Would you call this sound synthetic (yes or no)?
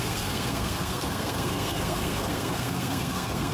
yes